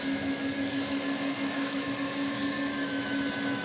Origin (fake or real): fake